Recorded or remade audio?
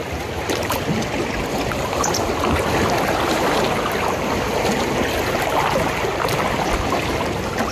recorded